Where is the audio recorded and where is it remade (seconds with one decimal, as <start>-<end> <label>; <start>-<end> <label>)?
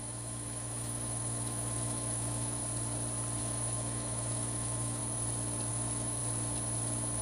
0.0-2.6 remade; 2.6-3.4 recorded; 3.4-5.0 remade; 5.0-5.7 recorded; 5.7-6.2 remade; 6.2-7.2 recorded